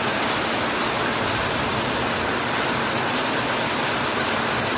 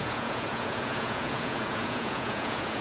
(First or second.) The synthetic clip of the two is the second